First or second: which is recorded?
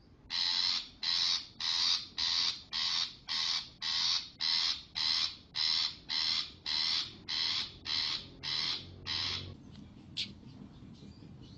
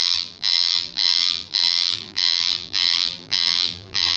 first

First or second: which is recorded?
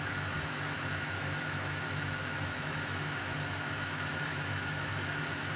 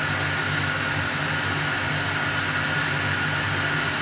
second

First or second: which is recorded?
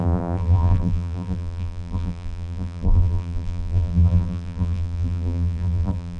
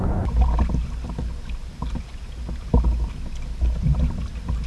second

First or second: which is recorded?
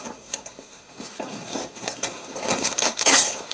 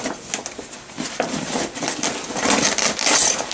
second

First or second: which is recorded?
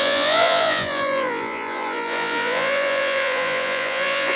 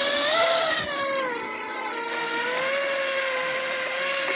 second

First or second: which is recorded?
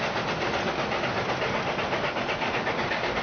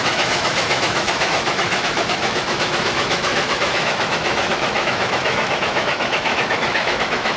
first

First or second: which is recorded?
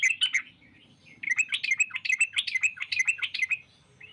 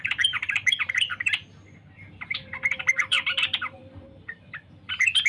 first